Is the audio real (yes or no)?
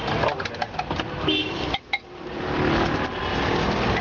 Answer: yes